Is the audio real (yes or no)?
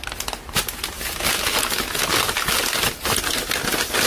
yes